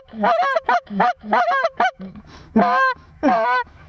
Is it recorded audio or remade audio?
remade